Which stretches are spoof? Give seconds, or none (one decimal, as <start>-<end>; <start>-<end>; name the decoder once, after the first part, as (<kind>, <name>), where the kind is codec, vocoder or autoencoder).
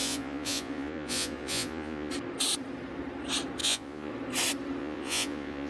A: 0.0-2.1 (vocoder, Vocos); 3.6-4.1; 4.8-5.7